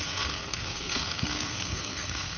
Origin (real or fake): fake